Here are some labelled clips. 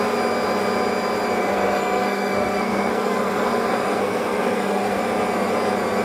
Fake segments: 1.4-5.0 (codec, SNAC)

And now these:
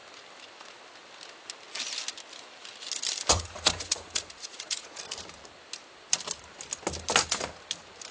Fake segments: 3.3-5.0 (vocoder, Vocos)